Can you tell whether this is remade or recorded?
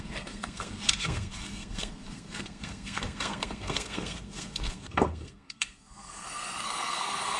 remade